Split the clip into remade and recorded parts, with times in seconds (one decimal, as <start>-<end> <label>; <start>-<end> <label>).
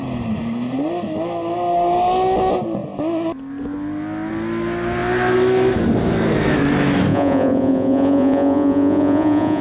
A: 0.0-7.1 recorded; 7.1-9.6 remade